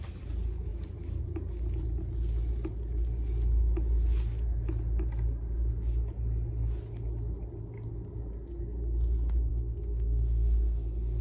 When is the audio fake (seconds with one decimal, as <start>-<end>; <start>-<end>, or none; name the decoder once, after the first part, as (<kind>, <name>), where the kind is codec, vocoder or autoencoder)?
9.5-11.2 (codec, SNAC)